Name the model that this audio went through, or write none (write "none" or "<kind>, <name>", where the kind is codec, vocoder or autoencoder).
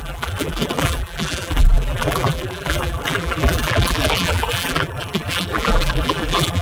vocoder, BigVGAN v2